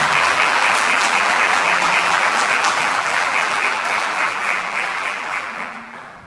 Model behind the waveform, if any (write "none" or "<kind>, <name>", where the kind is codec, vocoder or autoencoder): vocoder, BigVGAN v2